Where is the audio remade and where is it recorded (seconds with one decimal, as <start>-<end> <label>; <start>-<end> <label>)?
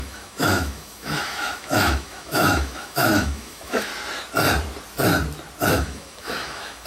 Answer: 0.0-3.9 remade; 3.9-5.7 recorded; 5.7-6.9 remade